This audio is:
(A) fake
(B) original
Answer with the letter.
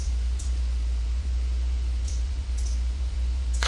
A